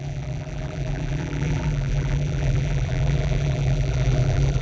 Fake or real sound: fake